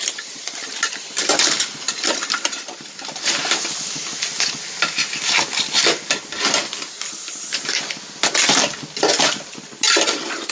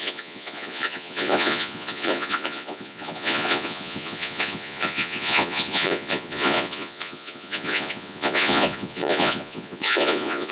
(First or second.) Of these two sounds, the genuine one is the first